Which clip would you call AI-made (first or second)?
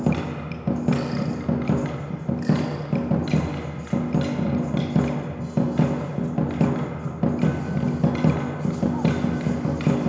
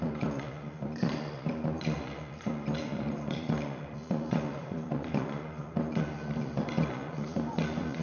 second